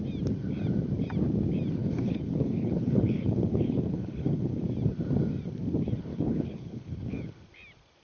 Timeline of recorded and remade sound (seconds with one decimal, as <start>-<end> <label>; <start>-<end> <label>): 0.0-1.8 recorded; 1.8-4.6 remade; 4.6-6.1 recorded; 6.1-7.3 remade; 7.3-8.0 recorded